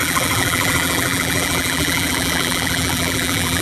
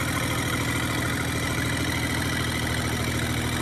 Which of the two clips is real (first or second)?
second